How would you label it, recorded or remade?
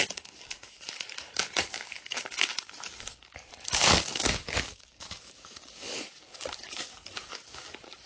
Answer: remade